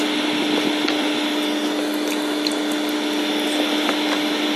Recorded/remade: recorded